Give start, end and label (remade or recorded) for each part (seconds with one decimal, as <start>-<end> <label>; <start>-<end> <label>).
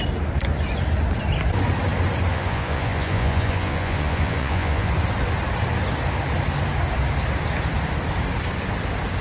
0.0-2.3 recorded; 2.3-4.9 remade; 4.9-9.2 recorded